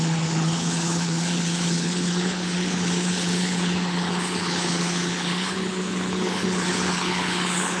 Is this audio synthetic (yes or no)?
yes